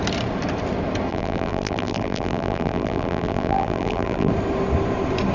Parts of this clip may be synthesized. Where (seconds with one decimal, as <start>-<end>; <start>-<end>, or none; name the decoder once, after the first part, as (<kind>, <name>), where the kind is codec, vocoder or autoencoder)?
1.1-4.3 (vocoder, BigVGAN v2)